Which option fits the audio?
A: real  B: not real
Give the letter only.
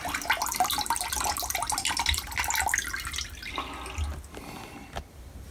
A